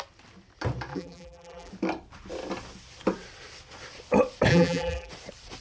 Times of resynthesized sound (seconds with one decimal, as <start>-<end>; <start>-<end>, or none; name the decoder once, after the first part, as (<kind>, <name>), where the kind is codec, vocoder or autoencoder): 0.9-1.7 (vocoder, BigVGAN v2); 4.5-5.1